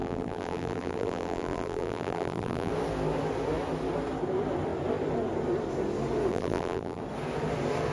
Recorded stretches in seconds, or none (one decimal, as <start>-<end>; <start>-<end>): 2.7-6.3; 7.0-7.9